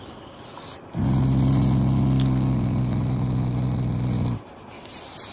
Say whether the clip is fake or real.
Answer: real